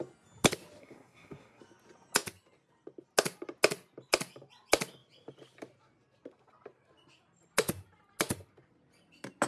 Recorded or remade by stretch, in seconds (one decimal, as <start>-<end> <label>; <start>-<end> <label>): 0.0-0.8 recorded; 0.8-1.6 remade; 1.6-9.5 recorded